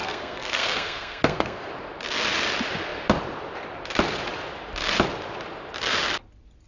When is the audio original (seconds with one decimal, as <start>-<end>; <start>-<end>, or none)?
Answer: 1.7-6.7